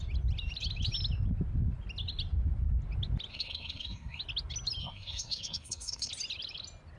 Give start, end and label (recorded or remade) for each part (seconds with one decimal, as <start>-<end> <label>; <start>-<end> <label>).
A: 0.0-3.3 recorded; 3.3-4.2 remade; 4.2-4.8 recorded; 4.8-6.1 remade; 6.1-7.0 recorded

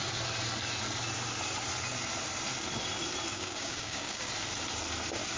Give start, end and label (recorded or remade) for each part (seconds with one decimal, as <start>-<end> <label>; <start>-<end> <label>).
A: 0.0-3.3 recorded; 3.3-4.3 remade; 4.3-5.4 recorded

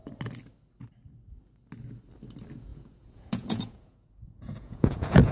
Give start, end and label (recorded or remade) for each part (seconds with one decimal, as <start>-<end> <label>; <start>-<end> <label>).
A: 0.0-2.7 recorded; 2.7-5.3 remade

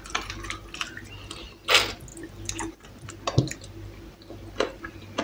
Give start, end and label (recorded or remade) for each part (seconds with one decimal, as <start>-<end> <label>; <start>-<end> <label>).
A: 0.0-5.2 recorded